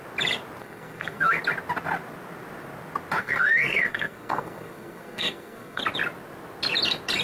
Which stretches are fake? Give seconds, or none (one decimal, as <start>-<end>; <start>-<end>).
0.6-1.4; 3.2-5.8